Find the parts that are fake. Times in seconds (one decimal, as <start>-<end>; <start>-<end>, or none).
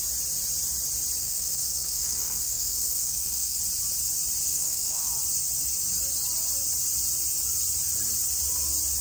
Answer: 1.2-3.6; 4.5-5.1